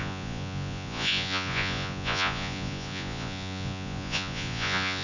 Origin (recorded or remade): remade